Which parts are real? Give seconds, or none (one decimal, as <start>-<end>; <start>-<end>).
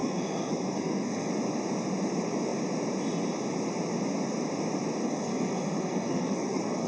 1.3-5.0